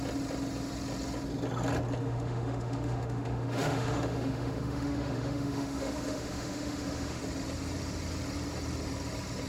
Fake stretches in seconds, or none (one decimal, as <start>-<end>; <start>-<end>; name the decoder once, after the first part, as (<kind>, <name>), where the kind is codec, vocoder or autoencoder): 2.0-7.2 (autoencoder, DAC-VAE)